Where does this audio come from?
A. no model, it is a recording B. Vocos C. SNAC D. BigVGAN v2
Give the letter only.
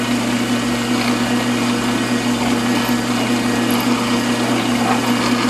A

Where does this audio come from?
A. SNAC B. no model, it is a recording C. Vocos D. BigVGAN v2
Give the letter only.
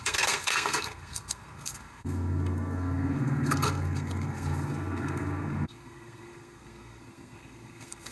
A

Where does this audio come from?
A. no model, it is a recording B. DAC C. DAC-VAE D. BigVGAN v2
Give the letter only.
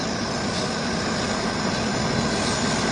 A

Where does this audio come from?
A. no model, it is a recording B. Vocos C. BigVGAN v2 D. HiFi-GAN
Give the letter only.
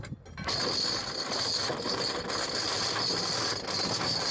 A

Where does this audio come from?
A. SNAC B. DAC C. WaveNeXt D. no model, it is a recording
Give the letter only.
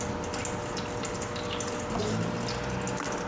D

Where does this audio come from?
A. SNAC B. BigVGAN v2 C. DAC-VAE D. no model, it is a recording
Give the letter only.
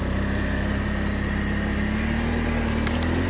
D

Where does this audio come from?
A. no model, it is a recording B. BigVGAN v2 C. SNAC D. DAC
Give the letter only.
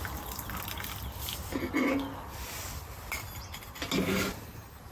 A